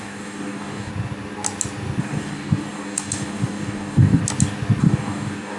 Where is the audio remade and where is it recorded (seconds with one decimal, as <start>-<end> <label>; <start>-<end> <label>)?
0.0-0.9 remade; 0.9-2.0 recorded; 2.0-4.2 remade; 4.2-4.8 recorded; 4.8-5.6 remade